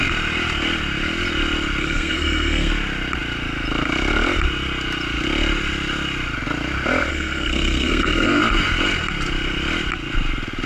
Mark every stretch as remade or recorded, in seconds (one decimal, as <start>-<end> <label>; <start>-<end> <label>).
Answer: 0.0-1.8 recorded; 1.8-2.7 remade; 2.7-7.1 recorded; 7.1-8.4 remade; 8.4-10.7 recorded